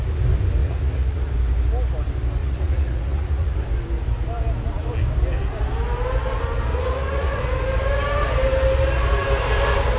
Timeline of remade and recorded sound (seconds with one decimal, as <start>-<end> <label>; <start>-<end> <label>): 0.0-0.6 recorded; 0.6-1.3 remade; 1.3-2.4 recorded; 2.4-3.6 remade; 3.6-6.7 recorded; 6.7-7.4 remade; 7.4-10.0 recorded